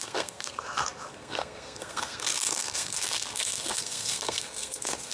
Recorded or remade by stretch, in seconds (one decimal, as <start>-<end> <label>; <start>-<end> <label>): 0.0-5.1 remade